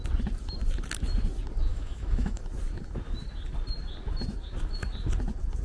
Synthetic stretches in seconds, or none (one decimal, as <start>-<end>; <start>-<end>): 1.7-2.4